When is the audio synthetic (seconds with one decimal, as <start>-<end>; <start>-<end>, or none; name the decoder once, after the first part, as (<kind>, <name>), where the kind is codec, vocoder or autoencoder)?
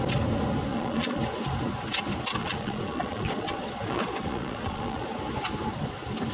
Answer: 0.7-1.2 (vocoder, Vocos); 2.4-5.2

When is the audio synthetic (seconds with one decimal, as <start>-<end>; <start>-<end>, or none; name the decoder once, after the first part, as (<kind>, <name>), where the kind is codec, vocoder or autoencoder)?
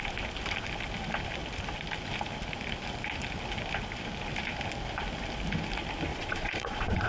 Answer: 6.1-7.1 (vocoder, Vocos)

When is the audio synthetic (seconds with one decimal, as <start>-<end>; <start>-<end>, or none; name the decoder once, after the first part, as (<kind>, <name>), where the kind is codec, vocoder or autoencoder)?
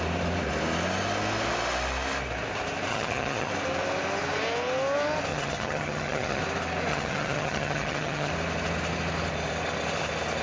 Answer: 2.9-3.5 (vocoder, HiFi-GAN); 5.3-6.4; 6.9-8.3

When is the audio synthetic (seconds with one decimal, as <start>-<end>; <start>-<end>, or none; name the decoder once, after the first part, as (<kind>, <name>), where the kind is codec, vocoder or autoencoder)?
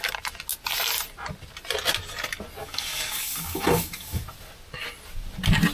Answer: 2.6-4.2 (codec, DAC)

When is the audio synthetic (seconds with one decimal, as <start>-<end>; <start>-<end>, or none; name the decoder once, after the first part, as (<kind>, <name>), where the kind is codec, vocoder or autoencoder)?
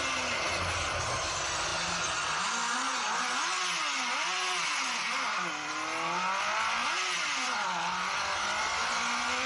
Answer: none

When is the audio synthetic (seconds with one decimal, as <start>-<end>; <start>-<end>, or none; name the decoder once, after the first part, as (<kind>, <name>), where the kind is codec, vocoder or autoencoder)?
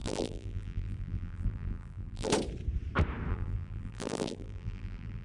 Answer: 0.0-2.3 (vocoder, BigVGAN v2); 3.3-5.2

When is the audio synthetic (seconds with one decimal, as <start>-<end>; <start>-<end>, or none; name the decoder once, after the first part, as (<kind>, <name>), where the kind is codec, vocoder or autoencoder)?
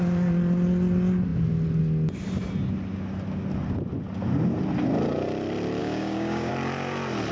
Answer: 5.8-6.5 (codec, DAC)